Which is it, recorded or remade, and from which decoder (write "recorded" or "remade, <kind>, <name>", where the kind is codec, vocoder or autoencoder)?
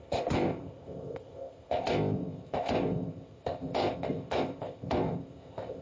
remade, codec, ZipCodec